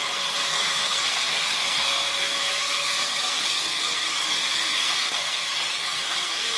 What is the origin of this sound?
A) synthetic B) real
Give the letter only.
A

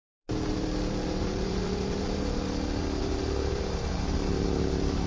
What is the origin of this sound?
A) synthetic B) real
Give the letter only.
A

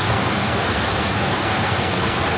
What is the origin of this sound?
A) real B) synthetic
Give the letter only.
B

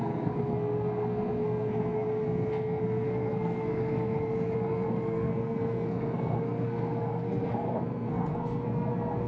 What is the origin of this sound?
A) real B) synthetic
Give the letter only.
B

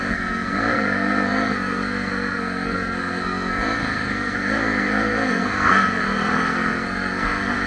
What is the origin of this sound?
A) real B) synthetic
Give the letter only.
B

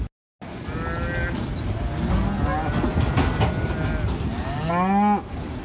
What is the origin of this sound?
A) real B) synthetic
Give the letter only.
A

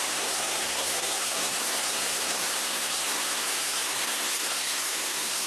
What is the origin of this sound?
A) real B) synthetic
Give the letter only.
B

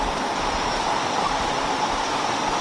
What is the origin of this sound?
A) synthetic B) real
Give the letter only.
B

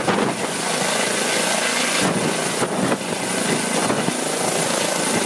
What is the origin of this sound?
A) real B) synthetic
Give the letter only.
B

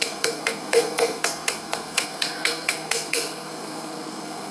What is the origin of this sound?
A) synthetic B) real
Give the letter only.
A